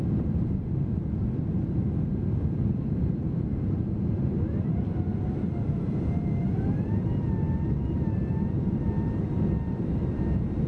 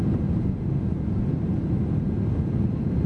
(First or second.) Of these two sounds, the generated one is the first